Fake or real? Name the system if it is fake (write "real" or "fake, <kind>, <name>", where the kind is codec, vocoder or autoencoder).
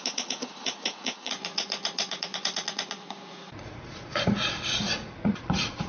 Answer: fake, vocoder, Vocos